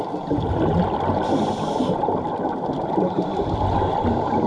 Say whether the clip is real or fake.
real